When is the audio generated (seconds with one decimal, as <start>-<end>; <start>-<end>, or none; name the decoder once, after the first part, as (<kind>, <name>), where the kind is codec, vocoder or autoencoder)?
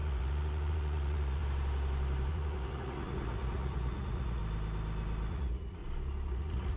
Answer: 0.0-1.4 (vocoder, Vocos); 2.3-4.4; 5.3-5.8; 6.3-6.8